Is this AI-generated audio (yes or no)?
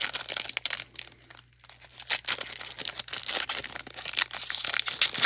no